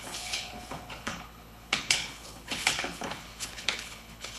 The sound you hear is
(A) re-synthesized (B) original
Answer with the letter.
A